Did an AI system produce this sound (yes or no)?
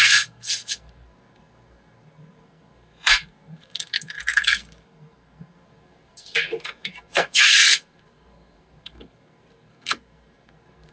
yes